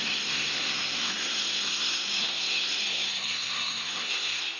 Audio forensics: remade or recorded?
remade